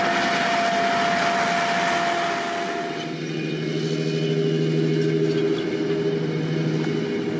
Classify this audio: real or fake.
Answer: real